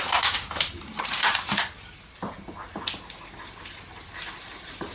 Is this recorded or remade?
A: recorded